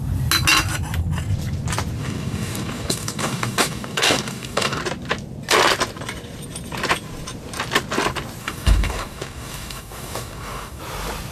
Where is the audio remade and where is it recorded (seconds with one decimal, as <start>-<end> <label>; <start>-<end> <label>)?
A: 0.0-2.0 recorded; 2.0-4.8 remade; 4.8-8.4 recorded; 8.4-10.8 remade; 10.8-11.3 recorded